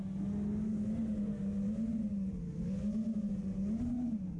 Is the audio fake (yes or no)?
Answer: no